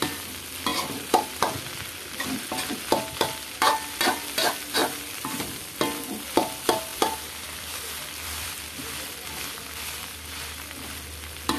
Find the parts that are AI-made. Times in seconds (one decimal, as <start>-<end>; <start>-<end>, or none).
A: 0.7-1.6; 4.8-5.8; 6.9-8.5